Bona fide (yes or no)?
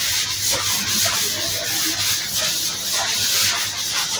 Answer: yes